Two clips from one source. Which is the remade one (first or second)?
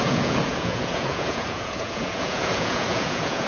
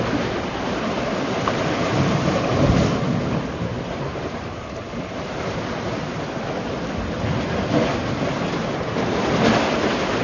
first